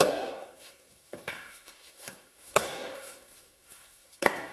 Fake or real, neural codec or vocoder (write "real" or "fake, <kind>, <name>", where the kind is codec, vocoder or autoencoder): fake, codec, SNAC